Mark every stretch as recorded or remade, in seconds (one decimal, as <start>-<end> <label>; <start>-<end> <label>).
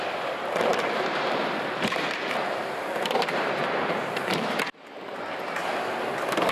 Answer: 0.0-0.7 recorded; 0.7-4.6 remade; 4.6-6.5 recorded